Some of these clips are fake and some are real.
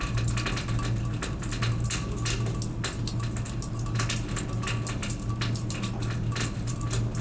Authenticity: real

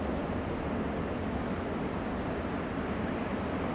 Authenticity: real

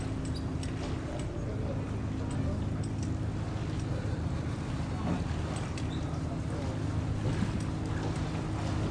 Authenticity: real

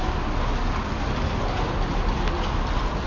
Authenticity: real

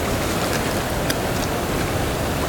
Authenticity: real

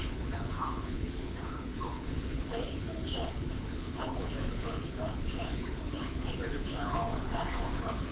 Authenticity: fake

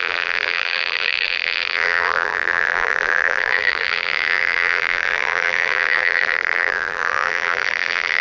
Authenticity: fake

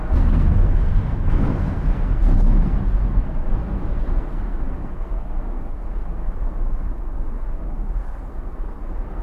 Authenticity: fake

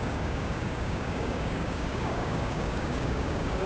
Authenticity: fake